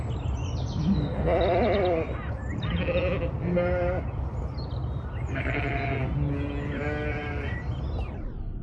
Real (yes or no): yes